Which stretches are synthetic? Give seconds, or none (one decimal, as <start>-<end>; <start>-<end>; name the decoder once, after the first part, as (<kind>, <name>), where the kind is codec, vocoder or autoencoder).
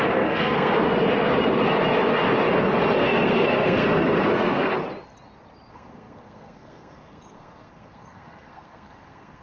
0.0-0.8 (codec, SNAC); 3.0-4.8; 5.7-9.4